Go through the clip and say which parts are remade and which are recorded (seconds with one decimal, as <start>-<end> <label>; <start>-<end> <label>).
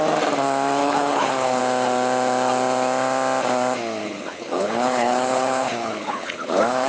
0.0-0.8 recorded; 0.8-1.6 remade; 1.6-4.0 recorded; 4.0-6.9 remade